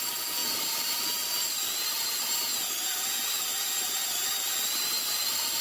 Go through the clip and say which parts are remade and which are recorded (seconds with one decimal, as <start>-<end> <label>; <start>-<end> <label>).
0.0-5.6 recorded